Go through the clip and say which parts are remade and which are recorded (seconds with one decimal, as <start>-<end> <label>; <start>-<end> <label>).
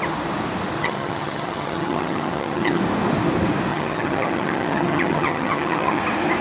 0.0-0.8 recorded; 0.8-2.8 remade; 2.8-3.7 recorded; 3.7-6.0 remade; 6.0-6.4 recorded